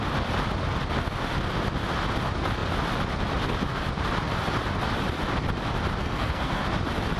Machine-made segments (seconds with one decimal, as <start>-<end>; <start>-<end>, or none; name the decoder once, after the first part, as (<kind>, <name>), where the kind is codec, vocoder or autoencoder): 6.0-6.6 (codec, SNAC)